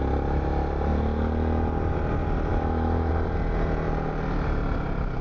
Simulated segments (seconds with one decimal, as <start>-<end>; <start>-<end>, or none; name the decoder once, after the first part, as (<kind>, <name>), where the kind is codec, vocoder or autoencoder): 2.5-3.1 (autoencoder, DAC-VAE)